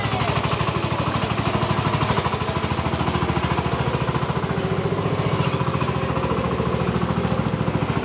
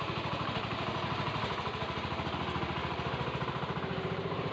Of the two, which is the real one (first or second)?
first